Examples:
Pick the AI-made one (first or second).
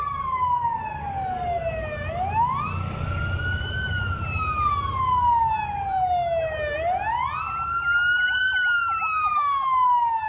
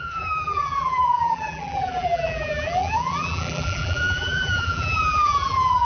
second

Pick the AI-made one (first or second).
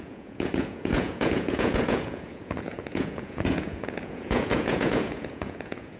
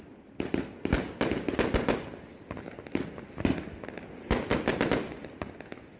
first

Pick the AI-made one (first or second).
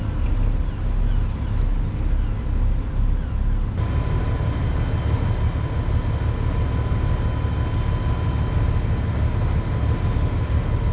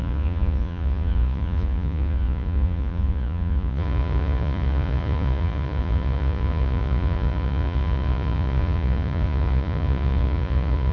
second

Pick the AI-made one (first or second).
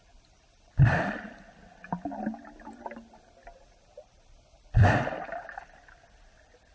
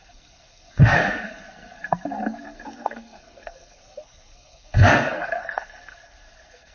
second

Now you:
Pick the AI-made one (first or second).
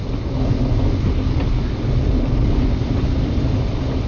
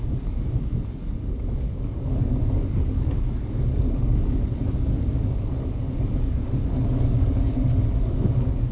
second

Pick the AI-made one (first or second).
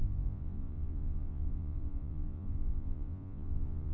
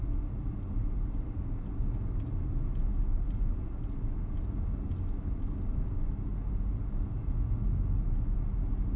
first